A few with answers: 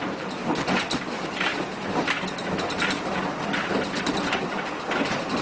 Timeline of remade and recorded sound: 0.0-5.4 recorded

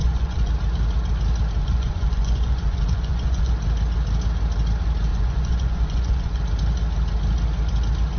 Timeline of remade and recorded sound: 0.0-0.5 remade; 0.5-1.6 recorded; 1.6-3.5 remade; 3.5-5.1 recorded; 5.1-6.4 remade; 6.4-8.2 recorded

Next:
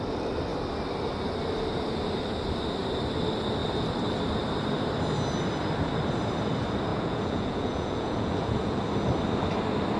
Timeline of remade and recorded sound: 0.0-6.9 recorded; 6.9-8.8 remade; 8.8-10.0 recorded